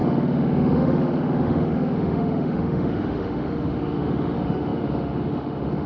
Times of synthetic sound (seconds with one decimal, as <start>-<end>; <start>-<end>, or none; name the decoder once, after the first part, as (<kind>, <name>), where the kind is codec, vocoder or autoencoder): 0.0-5.9 (autoencoder, DAC-VAE)